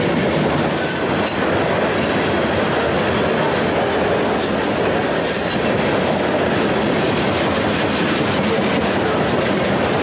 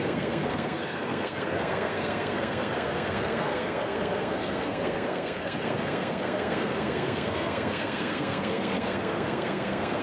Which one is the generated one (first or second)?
second